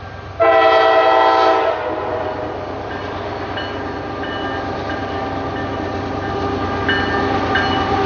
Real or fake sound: real